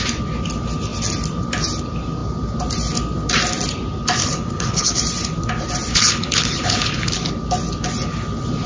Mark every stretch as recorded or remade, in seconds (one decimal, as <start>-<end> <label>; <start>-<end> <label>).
0.0-4.2 recorded; 4.2-5.0 remade; 5.0-5.9 recorded; 5.9-7.3 remade; 7.3-8.7 recorded